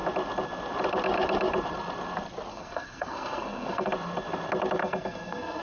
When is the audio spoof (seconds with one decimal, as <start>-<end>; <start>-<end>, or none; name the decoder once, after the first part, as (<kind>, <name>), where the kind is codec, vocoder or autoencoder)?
2.5-3.9 (codec, SNAC); 4.8-5.6

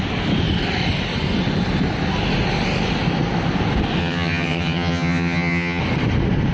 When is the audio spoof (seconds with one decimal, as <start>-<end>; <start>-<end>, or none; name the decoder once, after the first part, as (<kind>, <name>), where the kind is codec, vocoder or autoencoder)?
4.0-5.8 (vocoder, HiFi-GAN)

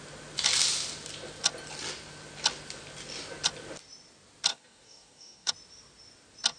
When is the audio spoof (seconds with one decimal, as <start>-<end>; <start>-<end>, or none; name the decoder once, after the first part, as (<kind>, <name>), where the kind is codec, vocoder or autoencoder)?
4.5-5.5 (codec, DAC)